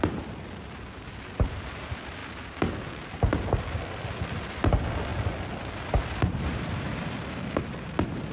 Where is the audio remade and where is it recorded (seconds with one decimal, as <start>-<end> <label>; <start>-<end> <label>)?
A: 0.0-8.3 recorded